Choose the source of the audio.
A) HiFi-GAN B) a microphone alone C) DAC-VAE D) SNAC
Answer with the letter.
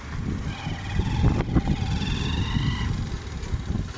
B